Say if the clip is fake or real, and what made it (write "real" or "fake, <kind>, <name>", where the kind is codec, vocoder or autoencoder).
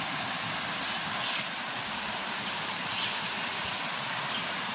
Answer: real